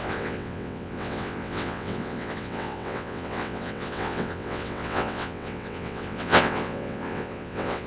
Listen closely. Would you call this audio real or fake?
fake